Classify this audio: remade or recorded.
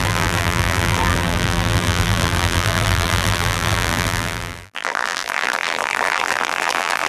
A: remade